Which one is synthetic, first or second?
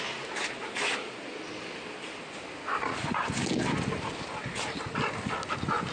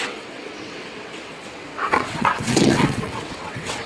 second